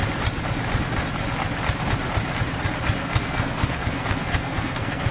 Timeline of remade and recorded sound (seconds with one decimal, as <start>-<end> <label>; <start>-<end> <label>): 0.0-3.0 recorded; 3.0-5.1 remade